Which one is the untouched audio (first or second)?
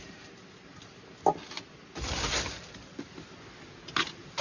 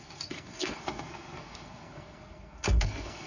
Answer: first